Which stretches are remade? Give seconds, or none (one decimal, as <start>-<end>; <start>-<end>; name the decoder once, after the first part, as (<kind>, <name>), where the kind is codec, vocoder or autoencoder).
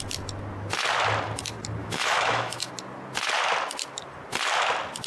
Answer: 1.8-2.7 (autoencoder, DAC-VAE)